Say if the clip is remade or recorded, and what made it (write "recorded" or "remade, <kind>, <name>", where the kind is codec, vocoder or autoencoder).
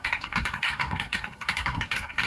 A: remade, codec, SNAC